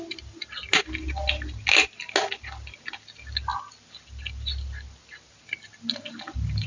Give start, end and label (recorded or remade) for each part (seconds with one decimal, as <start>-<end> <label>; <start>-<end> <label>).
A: 0.0-6.7 recorded